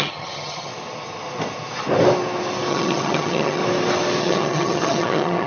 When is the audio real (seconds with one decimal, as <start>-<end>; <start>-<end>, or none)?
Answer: 0.7-2.7; 3.6-4.2